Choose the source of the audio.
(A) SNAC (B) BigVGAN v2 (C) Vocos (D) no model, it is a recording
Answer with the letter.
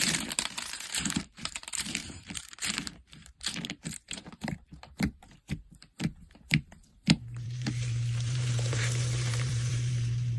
B